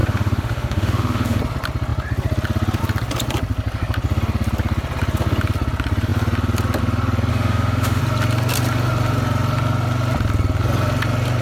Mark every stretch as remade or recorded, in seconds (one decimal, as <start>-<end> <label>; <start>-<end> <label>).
0.0-1.4 remade; 1.4-7.3 recorded; 7.3-8.0 remade; 8.0-11.4 recorded